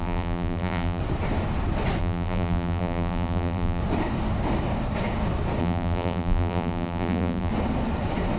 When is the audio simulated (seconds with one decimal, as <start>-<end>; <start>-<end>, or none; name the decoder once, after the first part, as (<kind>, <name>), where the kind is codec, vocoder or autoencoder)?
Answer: 0.0-1.0 (vocoder, BigVGAN v2); 2.0-3.8; 5.6-7.5